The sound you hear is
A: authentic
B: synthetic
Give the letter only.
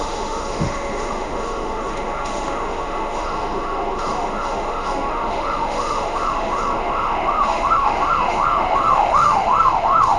B